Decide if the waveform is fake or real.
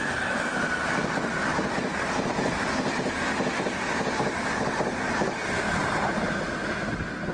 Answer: real